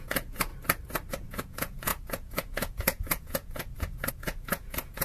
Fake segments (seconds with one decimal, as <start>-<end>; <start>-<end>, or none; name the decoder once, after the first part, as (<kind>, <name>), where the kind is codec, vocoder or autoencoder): 0.0-0.5 (vocoder, Vocos); 1.1-5.0

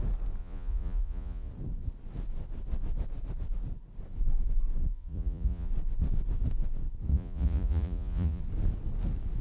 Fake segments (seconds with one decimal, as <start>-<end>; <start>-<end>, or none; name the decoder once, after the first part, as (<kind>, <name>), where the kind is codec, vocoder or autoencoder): 0.4-1.5 (vocoder, Vocos); 4.9-5.7; 7.1-8.4

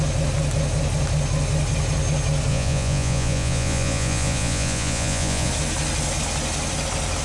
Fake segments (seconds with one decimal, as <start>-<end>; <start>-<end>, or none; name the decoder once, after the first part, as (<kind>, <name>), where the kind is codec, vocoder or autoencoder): 2.5-5.5 (vocoder, Vocos)